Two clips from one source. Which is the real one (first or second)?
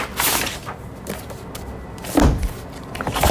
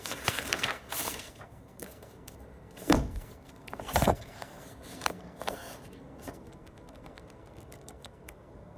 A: first